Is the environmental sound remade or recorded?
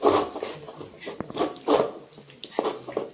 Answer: recorded